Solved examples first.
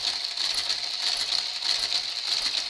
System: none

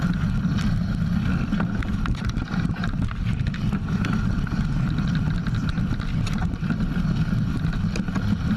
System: none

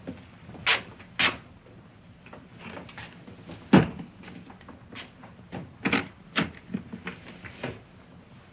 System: none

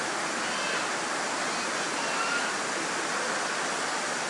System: none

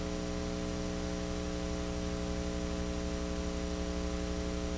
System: none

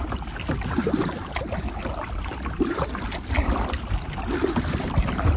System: none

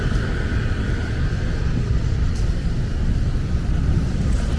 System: vocoder, BigVGAN v2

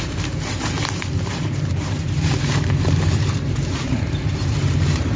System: vocoder, BigVGAN v2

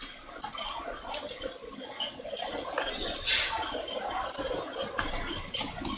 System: none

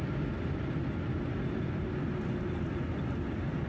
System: none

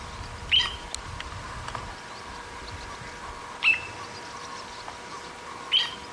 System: none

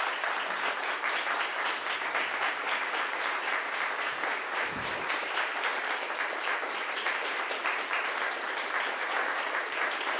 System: vocoder, BigVGAN v2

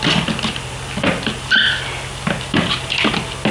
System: none